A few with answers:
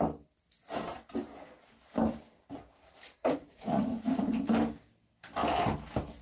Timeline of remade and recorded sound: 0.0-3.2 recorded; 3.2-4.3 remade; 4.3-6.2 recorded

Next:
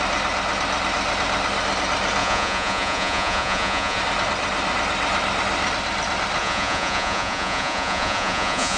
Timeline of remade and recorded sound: 0.0-2.2 recorded; 2.2-4.0 remade; 4.0-6.4 recorded; 6.4-8.8 remade

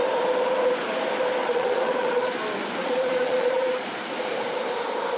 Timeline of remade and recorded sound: 0.0-1.4 recorded; 1.4-2.3 remade; 2.3-2.8 recorded; 2.8-3.9 remade; 3.9-5.2 recorded

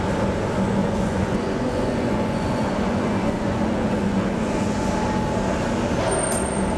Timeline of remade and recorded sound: 0.0-0.8 recorded; 0.8-4.9 remade; 4.9-6.8 recorded

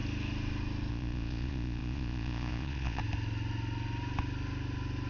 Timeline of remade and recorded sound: 0.0-0.9 recorded; 0.9-3.0 remade; 3.0-5.1 recorded

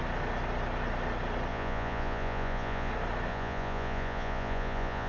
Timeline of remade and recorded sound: 0.0-1.5 recorded; 1.5-2.9 remade; 2.9-3.3 recorded; 3.3-5.1 remade

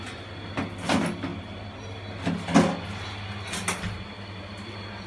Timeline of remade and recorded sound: 0.0-5.1 recorded

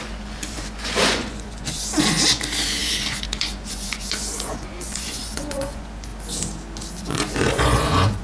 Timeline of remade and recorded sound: 0.0-6.1 remade; 6.1-7.0 recorded; 7.0-8.2 remade